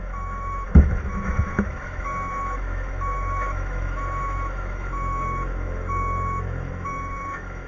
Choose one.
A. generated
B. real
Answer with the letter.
A